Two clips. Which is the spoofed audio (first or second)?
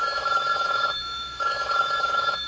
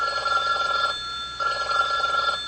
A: first